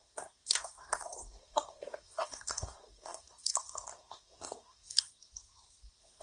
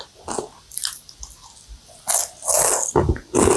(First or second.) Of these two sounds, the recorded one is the second